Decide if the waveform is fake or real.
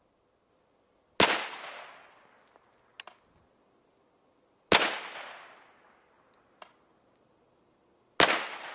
real